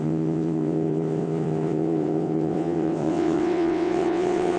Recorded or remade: remade